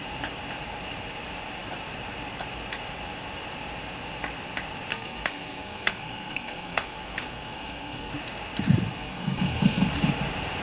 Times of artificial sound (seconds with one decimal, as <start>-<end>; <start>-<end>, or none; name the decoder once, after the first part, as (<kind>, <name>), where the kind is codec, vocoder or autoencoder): 4.9-8.1 (codec, SNAC); 8.9-9.9